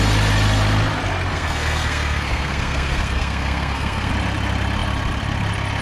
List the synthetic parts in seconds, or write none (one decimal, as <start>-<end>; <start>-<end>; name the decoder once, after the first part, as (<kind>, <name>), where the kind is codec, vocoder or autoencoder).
1.3-4.1 (codec, SNAC)